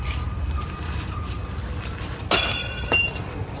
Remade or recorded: recorded